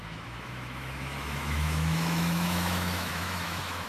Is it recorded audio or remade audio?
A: remade